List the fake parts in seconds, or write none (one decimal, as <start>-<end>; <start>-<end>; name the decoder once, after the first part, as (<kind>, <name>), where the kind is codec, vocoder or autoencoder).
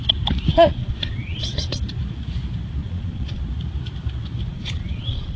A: 0.5-1.8 (vocoder, Vocos); 2.8-3.4; 4.5-5.4